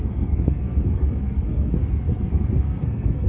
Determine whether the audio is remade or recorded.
remade